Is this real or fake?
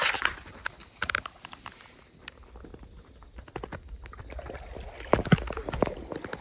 real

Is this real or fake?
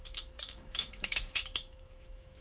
fake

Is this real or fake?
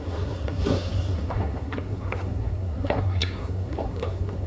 fake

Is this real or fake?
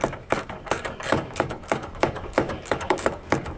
fake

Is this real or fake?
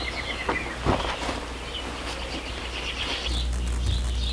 real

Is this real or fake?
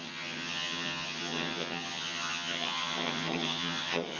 fake